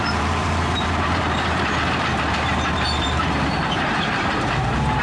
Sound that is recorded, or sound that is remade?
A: remade